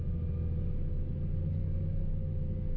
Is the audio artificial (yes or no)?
no